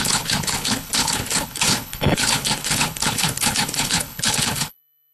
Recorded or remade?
remade